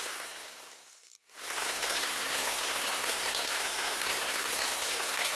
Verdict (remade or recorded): remade